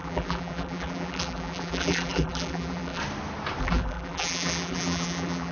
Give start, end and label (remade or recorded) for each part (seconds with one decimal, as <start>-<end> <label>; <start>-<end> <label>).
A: 0.0-3.0 remade; 3.0-3.6 recorded; 3.6-5.5 remade

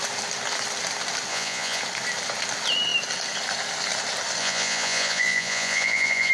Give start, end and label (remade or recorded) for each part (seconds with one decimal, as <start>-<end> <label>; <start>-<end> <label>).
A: 0.0-1.3 recorded; 1.3-1.8 remade; 1.8-4.4 recorded; 4.4-6.3 remade

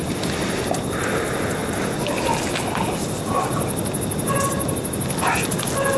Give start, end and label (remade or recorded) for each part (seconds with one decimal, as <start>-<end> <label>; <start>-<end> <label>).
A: 0.0-6.0 recorded

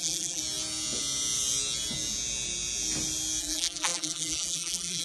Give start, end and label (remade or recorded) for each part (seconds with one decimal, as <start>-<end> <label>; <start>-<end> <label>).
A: 0.0-0.4 remade; 0.4-3.4 recorded; 3.4-5.0 remade

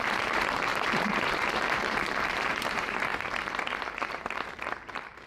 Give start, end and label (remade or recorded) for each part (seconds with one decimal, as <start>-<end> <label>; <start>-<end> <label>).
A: 0.0-3.1 remade; 3.1-3.8 recorded; 3.8-5.3 remade

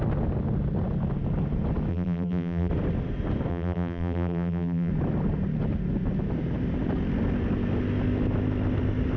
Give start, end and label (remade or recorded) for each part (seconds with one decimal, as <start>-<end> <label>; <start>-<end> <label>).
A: 0.0-1.9 recorded; 1.9-2.7 remade; 2.7-3.5 recorded; 3.5-4.9 remade; 4.9-9.2 recorded